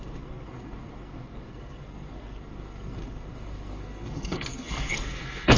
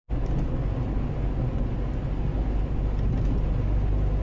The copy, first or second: first